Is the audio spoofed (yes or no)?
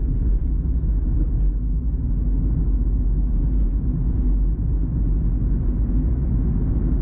no